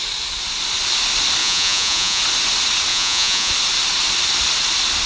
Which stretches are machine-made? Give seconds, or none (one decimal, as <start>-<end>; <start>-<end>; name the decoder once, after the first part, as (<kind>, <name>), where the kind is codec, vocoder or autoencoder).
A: 1.4-2.2 (vocoder, Vocos); 2.9-3.5